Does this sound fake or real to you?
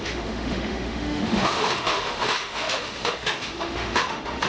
fake